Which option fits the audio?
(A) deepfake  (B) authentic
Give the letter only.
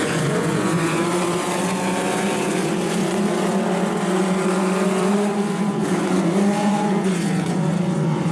A